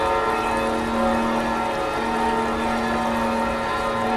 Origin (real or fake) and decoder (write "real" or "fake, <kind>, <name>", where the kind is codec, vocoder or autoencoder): real